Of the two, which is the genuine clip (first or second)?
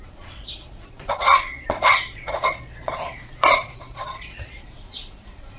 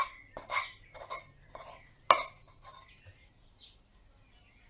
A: second